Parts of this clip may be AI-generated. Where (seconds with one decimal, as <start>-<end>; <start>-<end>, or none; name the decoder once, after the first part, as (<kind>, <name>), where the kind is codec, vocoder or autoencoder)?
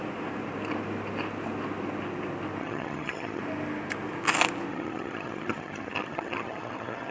2.6-3.4 (vocoder, HiFi-GAN); 4.7-7.1